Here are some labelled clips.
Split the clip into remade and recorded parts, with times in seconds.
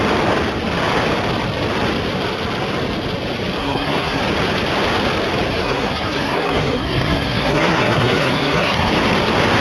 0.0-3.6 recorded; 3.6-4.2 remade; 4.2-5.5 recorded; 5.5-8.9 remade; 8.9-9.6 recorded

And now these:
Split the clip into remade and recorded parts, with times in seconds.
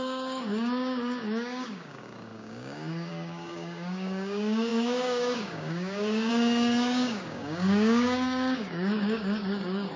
0.0-10.0 remade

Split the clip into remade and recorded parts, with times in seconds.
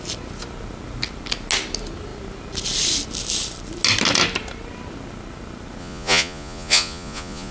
0.0-5.8 recorded; 5.8-7.5 remade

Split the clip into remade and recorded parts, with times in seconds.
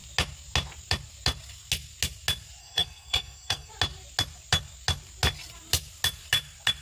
0.0-2.6 recorded; 2.6-3.7 remade; 3.7-6.8 recorded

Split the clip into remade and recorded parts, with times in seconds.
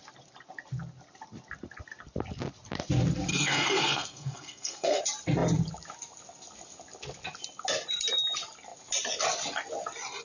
0.0-3.3 recorded; 3.3-5.0 remade; 5.0-10.2 recorded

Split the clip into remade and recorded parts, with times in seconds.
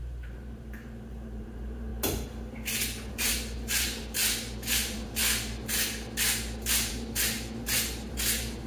0.0-1.9 remade; 1.9-3.1 recorded; 3.1-5.2 remade; 5.2-6.9 recorded; 6.9-8.7 remade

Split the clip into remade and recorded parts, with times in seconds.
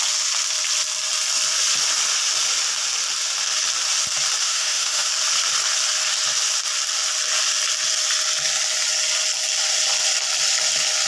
0.0-4.4 recorded; 4.4-5.1 remade; 5.1-11.1 recorded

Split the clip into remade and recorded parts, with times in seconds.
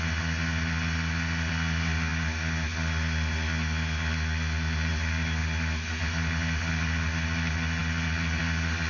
0.0-8.9 recorded